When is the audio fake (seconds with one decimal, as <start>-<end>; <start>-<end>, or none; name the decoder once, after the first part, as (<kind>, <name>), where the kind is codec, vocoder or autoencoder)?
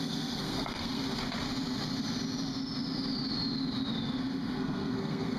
0.0-1.0 (codec, SNAC); 4.2-5.4